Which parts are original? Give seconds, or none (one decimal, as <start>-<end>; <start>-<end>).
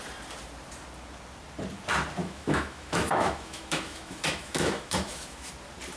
0.0-2.2; 5.5-6.0